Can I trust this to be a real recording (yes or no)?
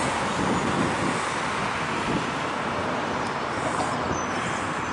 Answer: yes